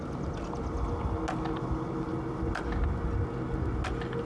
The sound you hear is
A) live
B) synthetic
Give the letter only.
A